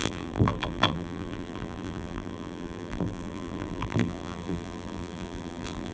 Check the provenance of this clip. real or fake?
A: fake